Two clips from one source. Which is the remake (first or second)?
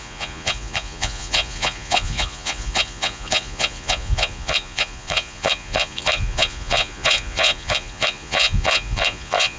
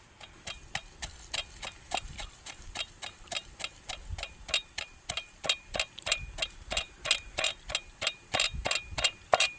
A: first